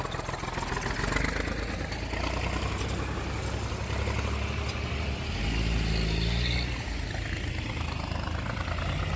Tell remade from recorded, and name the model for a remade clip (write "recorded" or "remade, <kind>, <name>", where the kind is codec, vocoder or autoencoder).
recorded